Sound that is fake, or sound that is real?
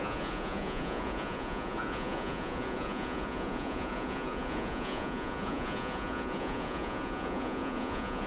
fake